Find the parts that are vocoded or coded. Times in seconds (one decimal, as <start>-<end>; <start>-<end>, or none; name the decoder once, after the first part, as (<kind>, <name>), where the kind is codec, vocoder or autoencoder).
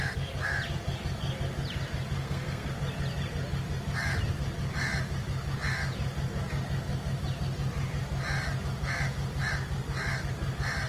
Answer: 2.2-2.7 (codec, SNAC)